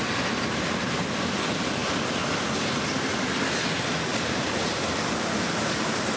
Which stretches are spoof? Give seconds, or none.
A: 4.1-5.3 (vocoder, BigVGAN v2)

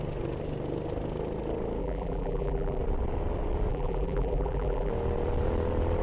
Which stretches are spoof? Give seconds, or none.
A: 1.8-2.8 (vocoder, BigVGAN v2); 3.7-4.9

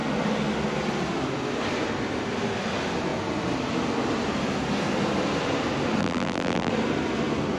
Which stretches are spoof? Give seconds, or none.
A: 6.0-6.7 (vocoder, BigVGAN v2)

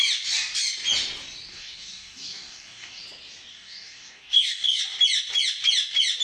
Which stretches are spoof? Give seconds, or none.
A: 1.5-3.0 (codec, DAC); 3.5-4.8

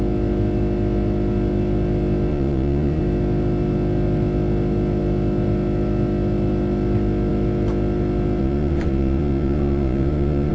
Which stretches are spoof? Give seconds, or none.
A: 2.3-3.0 (vocoder, Vocos); 8.4-10.5

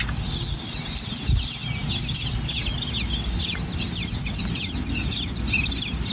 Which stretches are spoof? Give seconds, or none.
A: none

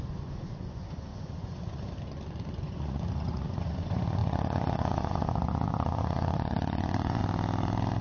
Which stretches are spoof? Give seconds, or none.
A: 0.0-7.2 (vocoder, Vocos)

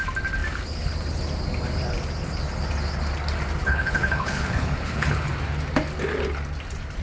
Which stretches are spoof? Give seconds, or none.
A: 3.6-5.3 (codec, HILCodec)